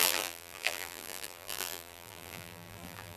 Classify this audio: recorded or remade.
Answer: remade